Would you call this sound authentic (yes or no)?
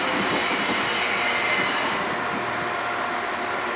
yes